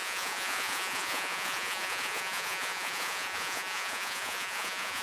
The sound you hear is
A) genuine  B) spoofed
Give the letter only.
B